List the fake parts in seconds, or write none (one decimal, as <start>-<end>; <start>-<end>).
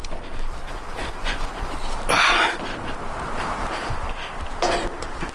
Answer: 1.2-1.7